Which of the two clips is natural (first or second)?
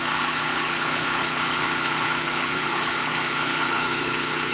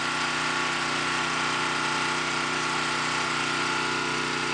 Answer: second